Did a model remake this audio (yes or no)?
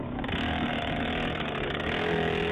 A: yes